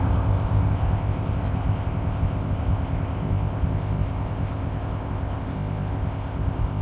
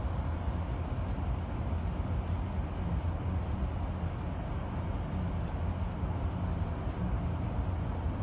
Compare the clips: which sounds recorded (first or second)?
second